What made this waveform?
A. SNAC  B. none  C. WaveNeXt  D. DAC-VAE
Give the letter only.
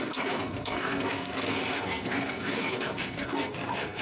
A